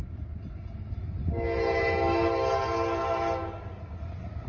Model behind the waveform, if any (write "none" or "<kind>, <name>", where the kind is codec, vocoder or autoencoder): none